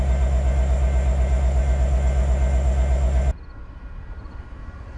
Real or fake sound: real